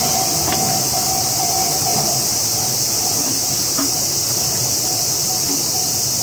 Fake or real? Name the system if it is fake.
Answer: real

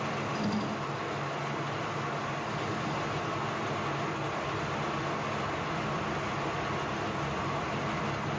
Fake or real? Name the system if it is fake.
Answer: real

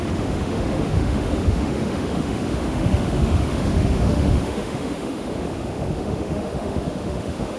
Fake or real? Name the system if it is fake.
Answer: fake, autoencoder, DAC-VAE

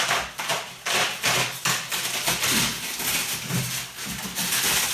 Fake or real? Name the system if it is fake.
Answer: real